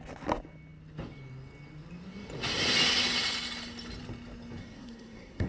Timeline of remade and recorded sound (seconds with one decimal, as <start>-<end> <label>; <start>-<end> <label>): 0.0-4.6 recorded; 4.6-5.5 remade